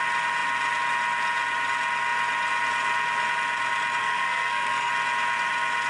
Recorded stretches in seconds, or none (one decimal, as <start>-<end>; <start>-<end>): 0.0-4.0; 4.9-5.9